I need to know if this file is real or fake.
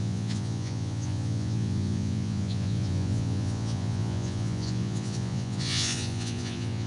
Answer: fake